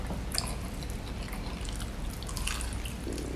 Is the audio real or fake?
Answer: real